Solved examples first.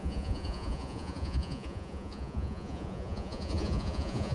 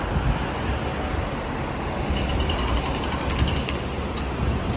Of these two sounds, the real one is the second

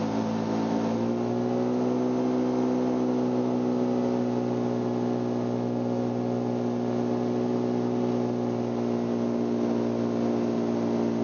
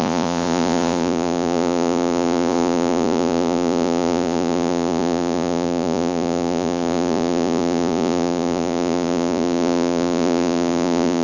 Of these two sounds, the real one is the first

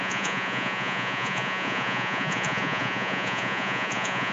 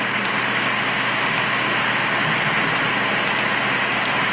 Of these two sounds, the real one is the second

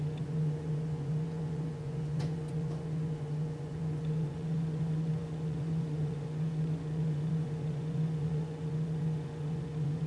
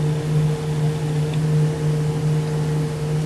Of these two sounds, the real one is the second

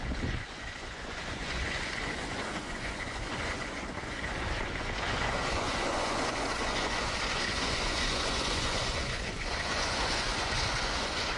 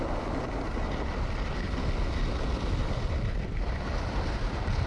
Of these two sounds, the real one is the second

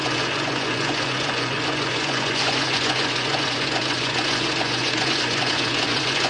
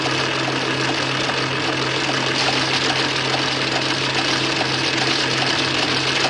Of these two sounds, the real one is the second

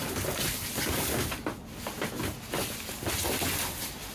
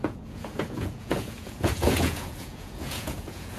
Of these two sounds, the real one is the first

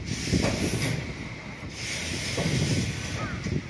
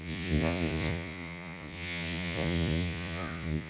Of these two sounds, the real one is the first